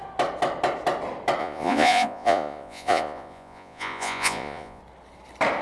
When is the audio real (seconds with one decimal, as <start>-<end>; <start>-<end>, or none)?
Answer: 0.0-1.4; 4.8-5.6